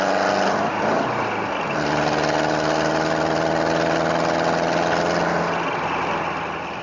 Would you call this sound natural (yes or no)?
yes